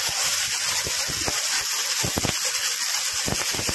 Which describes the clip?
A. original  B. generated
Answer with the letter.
A